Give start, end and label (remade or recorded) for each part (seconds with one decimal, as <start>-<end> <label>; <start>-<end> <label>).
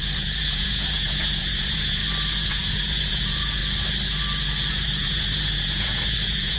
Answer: 0.0-2.0 remade; 2.0-2.5 recorded; 2.5-3.6 remade; 3.6-4.7 recorded; 4.7-6.6 remade